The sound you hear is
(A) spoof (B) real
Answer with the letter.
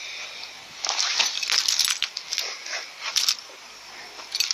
B